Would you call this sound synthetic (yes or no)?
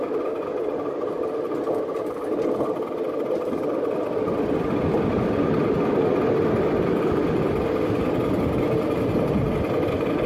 no